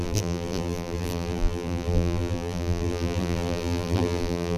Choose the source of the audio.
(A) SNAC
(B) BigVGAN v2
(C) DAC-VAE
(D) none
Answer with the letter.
B